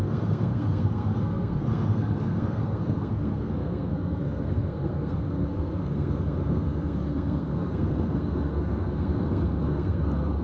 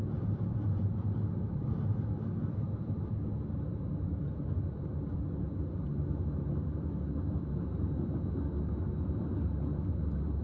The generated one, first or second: first